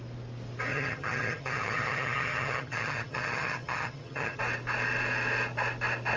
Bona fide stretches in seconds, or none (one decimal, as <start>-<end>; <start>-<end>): 0.0-0.7; 4.4-6.2